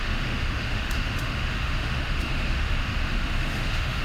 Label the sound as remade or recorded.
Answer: remade